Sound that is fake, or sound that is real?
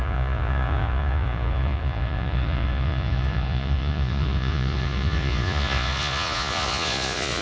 fake